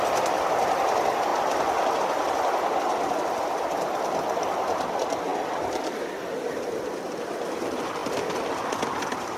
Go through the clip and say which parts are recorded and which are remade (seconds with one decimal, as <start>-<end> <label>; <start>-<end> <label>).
0.0-9.4 recorded